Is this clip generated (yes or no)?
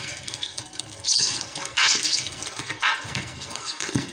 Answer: yes